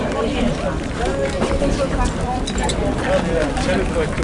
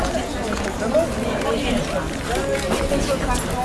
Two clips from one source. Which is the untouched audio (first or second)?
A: second